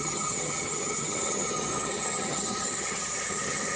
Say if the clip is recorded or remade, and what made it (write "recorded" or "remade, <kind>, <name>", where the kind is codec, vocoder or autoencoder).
remade, vocoder, HiFi-GAN